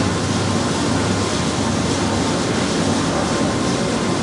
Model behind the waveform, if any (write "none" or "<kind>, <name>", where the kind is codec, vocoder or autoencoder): none